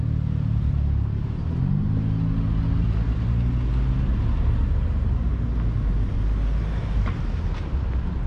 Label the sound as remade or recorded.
recorded